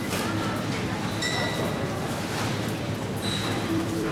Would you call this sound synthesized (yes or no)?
yes